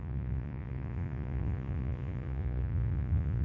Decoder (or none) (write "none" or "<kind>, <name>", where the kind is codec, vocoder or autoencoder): vocoder, Vocos